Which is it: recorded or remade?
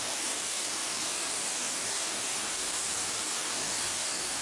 remade